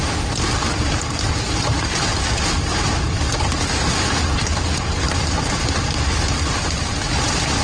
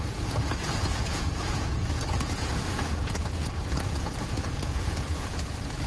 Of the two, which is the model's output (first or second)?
second